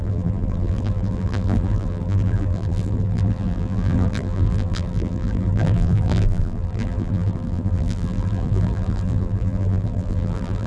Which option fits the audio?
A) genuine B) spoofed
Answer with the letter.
B